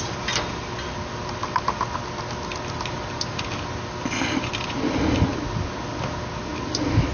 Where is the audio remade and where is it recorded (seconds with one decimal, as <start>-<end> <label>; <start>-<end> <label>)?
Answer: 0.0-7.1 recorded